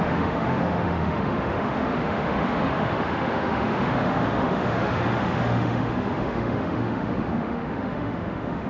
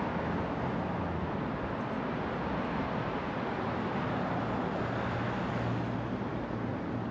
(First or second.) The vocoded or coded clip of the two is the first